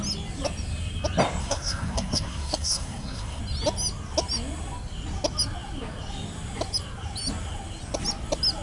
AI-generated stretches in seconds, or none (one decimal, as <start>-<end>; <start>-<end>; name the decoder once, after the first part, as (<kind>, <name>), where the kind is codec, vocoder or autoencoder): 1.4-3.4 (codec, SNAC)